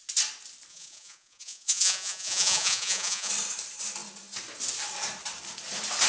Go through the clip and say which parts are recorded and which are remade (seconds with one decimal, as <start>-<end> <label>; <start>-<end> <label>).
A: 0.0-0.7 recorded; 0.7-3.3 remade; 3.3-6.1 recorded